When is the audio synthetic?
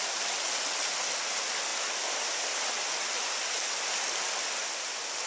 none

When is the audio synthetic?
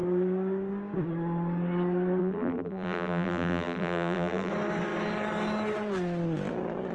2.2-4.5 (vocoder, BigVGAN v2)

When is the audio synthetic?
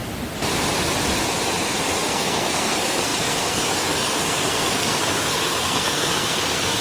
2.0-6.8 (codec, SNAC)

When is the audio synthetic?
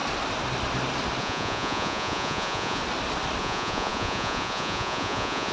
1.2-2.8 (vocoder, Vocos); 3.4-5.5